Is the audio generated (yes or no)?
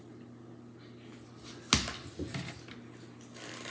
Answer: no